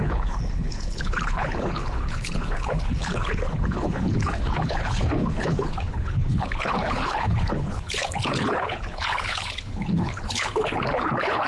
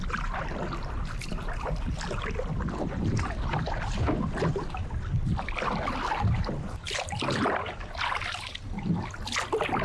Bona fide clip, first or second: second